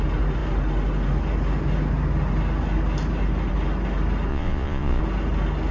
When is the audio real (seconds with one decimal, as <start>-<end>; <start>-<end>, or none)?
0.0-4.3; 5.0-5.7